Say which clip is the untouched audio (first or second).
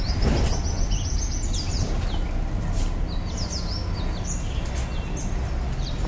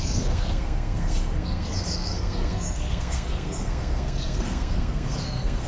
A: first